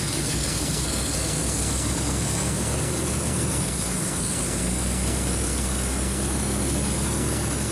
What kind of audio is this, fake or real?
fake